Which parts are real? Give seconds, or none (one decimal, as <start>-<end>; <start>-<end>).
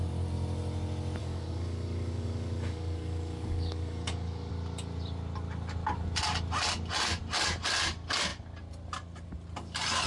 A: 0.0-1.2; 4.5-10.1